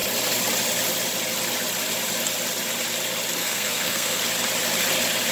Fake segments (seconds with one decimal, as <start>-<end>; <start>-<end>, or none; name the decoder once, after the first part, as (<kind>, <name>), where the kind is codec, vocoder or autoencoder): 3.4-4.2 (codec, SNAC)